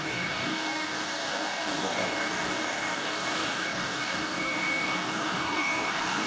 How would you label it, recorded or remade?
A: remade